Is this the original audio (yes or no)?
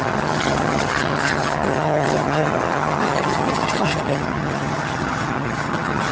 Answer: no